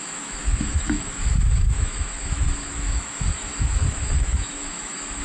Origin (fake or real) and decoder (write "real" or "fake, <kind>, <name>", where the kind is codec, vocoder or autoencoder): fake, autoencoder, DAC-VAE